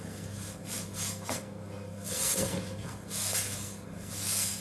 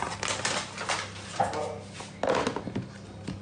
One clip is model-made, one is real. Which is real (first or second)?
second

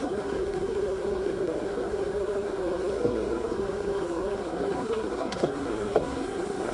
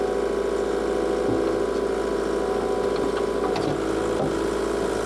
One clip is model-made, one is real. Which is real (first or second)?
second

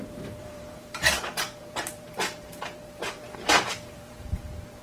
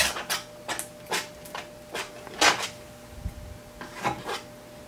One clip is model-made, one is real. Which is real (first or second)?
second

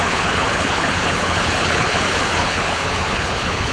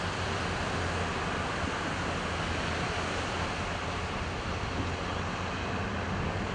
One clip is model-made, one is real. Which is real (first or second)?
second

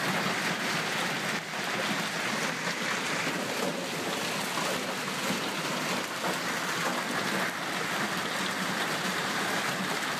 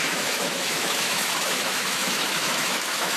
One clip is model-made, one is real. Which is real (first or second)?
first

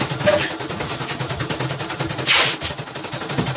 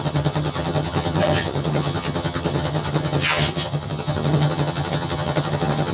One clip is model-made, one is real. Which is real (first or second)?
first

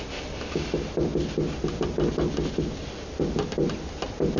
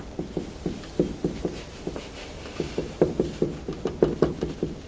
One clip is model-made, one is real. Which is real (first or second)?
first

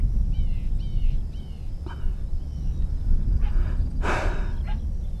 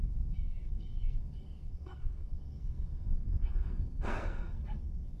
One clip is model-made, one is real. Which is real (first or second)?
first